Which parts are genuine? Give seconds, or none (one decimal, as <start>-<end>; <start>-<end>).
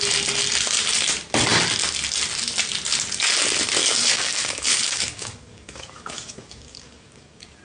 0.0-3.8